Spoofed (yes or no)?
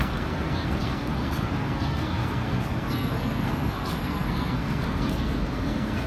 yes